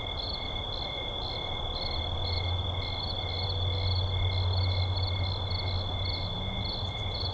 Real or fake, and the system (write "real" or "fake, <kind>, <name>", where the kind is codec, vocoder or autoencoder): real